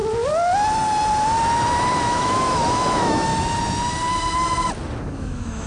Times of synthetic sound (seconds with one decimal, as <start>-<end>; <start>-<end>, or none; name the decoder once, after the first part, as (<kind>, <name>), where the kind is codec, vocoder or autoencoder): 2.0-3.3 (autoencoder, DAC-VAE); 5.0-5.7